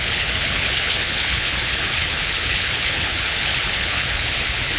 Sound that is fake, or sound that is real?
fake